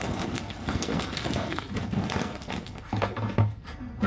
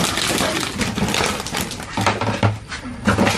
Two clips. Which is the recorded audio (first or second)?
second